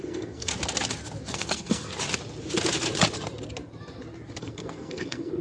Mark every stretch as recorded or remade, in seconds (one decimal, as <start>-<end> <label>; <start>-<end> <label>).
0.0-0.5 remade; 0.5-1.3 recorded; 1.3-1.9 remade; 1.9-4.4 recorded; 4.4-5.4 remade